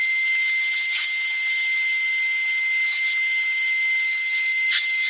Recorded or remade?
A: recorded